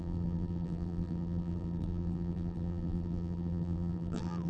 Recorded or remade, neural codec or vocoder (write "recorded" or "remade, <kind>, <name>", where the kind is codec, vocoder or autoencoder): remade, vocoder, BigVGAN v2